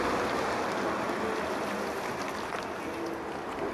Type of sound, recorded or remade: recorded